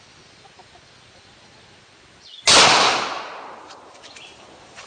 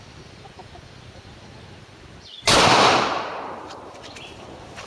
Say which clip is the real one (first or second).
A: first